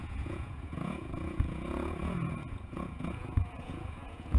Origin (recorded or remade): remade